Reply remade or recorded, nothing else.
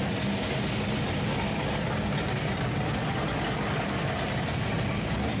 recorded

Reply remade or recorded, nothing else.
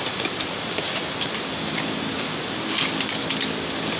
recorded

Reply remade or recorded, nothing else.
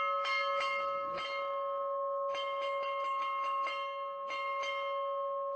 recorded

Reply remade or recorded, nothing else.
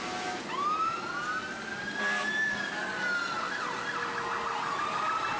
recorded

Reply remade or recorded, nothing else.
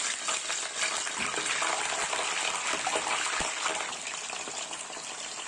remade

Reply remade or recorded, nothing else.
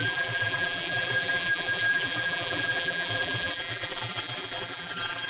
remade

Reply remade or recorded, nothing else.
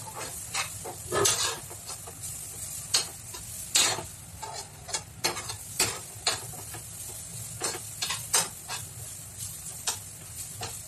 recorded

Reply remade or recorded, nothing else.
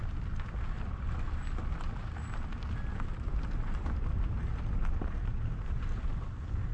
recorded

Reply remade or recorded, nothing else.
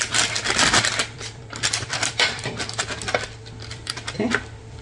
remade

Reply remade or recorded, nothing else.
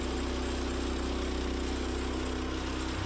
recorded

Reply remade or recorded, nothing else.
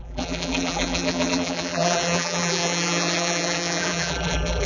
remade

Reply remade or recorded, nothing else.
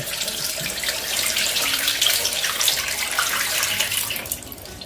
remade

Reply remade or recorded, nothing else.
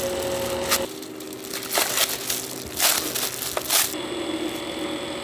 recorded